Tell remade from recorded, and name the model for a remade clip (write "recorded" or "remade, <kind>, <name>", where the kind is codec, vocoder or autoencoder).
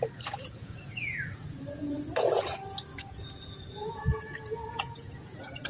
remade, vocoder, Vocos